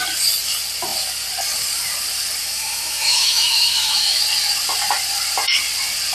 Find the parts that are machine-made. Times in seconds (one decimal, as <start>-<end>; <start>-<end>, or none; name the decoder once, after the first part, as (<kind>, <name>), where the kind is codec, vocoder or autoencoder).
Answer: 2.4-4.2 (autoencoder, DAC-VAE)